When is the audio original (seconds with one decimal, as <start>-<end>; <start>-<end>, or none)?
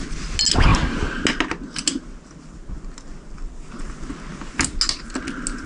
0.0-5.7